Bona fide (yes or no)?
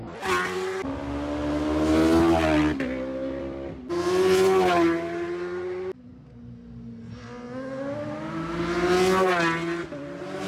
yes